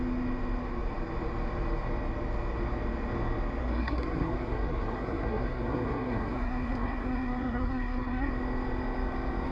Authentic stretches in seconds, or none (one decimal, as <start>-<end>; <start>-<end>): 0.0-3.6; 8.3-9.5